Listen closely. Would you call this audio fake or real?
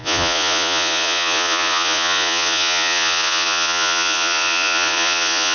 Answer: fake